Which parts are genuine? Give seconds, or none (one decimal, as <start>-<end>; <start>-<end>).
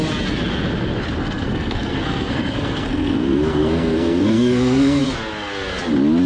0.0-1.2; 5.0-6.3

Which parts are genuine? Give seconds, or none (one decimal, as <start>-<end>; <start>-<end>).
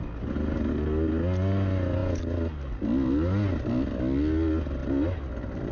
0.0-5.7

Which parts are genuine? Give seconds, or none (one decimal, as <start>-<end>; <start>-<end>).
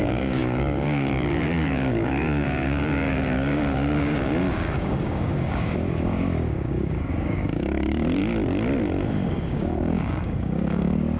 8.2-9.3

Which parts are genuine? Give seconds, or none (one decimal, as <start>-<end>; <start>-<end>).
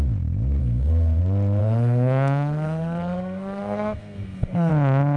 0.0-0.6; 1.2-1.6; 4.7-5.2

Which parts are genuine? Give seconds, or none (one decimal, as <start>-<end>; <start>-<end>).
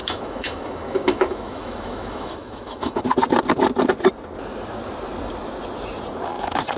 3.0-6.8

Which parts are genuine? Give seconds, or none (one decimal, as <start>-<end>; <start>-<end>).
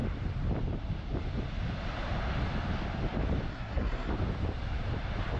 0.0-3.5; 4.1-5.4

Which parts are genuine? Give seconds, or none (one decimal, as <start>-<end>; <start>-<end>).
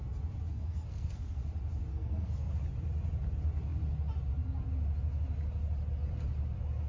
0.0-0.5; 1.4-1.9; 2.5-6.9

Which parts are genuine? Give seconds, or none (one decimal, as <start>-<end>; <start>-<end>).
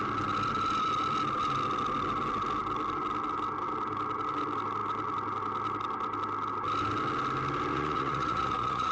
0.0-7.7